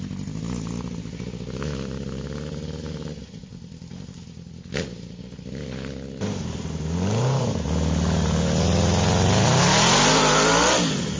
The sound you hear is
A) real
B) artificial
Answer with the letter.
A